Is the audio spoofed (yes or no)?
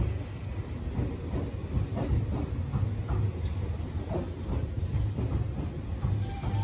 no